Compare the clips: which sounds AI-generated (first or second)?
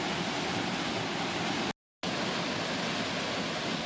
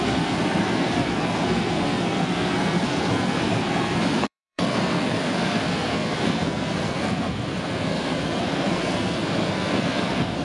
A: second